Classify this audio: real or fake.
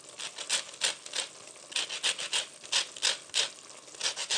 real